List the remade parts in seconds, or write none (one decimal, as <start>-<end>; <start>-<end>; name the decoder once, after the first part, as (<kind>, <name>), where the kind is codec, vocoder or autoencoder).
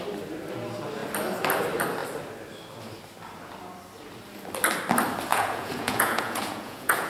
5.3-7.1 (vocoder, Vocos)